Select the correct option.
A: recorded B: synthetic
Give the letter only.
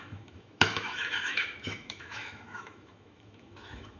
B